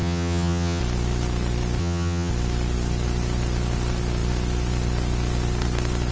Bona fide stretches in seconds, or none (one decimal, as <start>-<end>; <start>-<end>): 0.8-1.8; 2.3-6.1

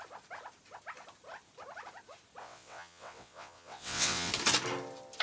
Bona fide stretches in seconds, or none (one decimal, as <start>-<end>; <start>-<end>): 0.0-2.4; 4.3-5.2

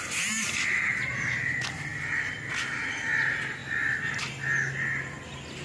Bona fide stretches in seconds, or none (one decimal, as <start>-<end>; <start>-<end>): 0.0-3.6; 4.2-5.6

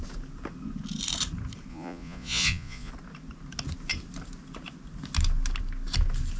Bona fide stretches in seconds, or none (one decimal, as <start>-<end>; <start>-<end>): 0.0-1.7; 2.9-6.4

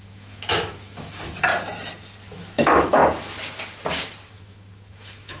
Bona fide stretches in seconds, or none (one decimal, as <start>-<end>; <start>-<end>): 1.5-2.2; 3.0-4.3

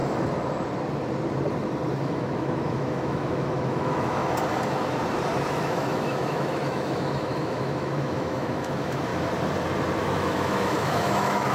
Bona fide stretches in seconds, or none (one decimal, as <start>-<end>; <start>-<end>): 0.0-2.0; 4.2-5.5; 9.1-10.0

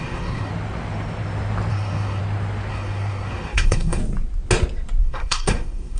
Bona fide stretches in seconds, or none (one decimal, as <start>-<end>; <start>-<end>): 0.5-1.7; 2.2-2.7; 4.0-5.0